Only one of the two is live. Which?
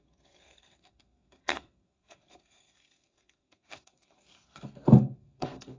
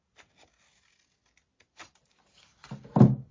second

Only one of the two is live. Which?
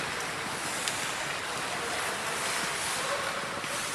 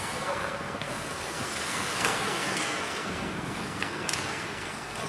first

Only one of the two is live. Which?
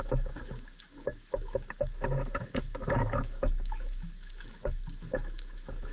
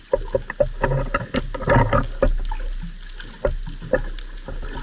second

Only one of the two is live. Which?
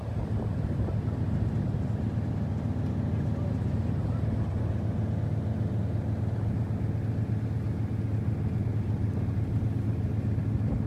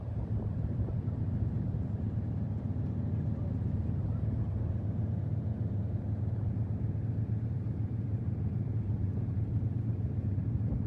first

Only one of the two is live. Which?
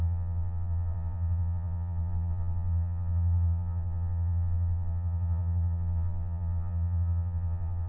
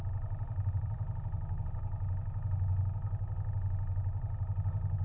second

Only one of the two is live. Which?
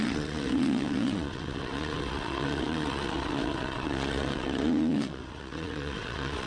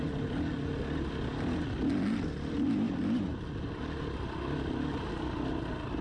second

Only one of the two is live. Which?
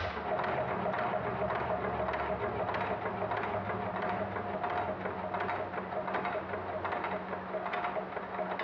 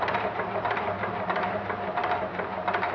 first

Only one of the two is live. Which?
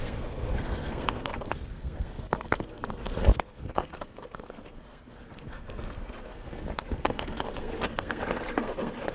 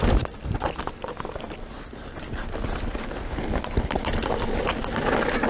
second